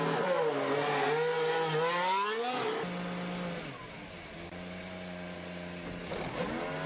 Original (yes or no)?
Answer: yes